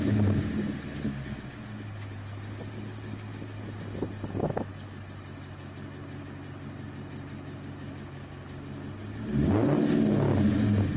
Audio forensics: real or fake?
real